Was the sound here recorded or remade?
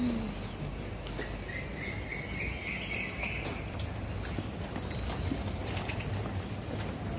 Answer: recorded